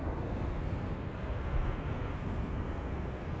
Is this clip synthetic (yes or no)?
yes